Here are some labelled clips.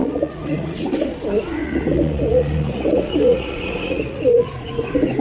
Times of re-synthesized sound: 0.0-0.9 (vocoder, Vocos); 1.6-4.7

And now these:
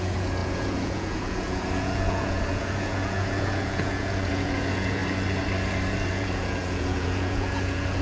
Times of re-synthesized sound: 0.0-5.0 (vocoder, Vocos); 6.1-8.0

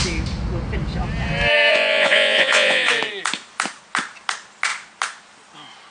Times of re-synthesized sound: 1.7-2.9 (vocoder, Vocos)

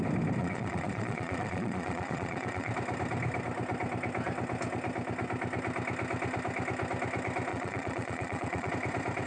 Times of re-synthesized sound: 0.4-2.7 (vocoder, Vocos); 7.5-8.7

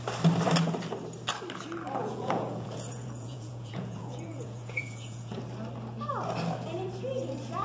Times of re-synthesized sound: 2.0-5.4 (vocoder, Vocos)

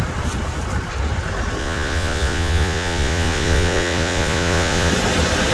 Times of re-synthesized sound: 1.6-4.9 (vocoder, Vocos)